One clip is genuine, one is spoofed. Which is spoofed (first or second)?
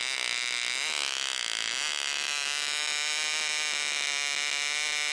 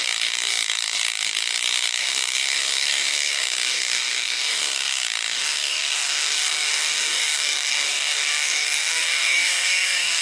second